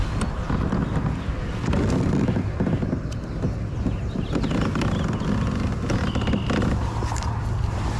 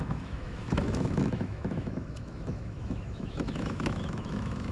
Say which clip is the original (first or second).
first